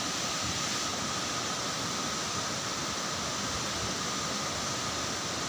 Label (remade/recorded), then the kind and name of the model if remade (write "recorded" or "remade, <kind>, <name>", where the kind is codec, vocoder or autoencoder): recorded